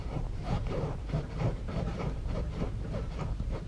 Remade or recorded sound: remade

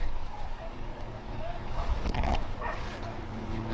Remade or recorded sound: remade